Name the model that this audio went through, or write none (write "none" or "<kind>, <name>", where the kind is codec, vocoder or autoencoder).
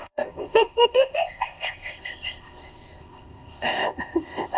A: codec, ZipCodec